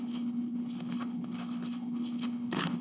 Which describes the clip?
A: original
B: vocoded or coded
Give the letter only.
B